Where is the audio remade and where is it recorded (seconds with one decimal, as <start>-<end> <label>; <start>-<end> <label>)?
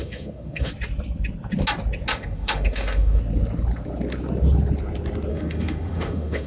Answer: 0.0-0.7 remade; 0.7-2.1 recorded; 2.1-3.2 remade; 3.2-5.3 recorded; 5.3-6.5 remade